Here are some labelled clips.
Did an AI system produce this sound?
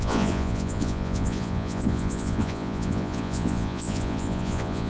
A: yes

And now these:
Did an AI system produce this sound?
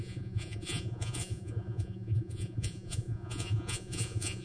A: yes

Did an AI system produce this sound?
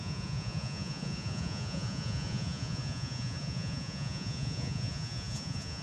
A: yes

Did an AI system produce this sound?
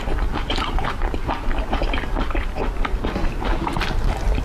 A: no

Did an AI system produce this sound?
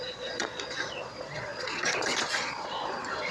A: yes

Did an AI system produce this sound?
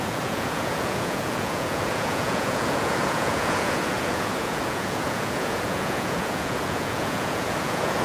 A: yes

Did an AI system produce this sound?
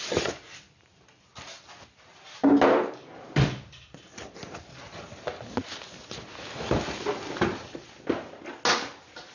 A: no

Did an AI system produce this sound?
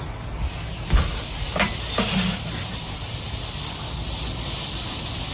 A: no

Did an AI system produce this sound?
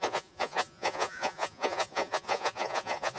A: yes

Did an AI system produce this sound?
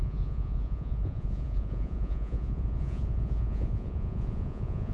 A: yes